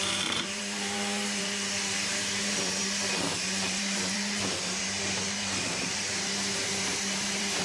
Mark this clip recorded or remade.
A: remade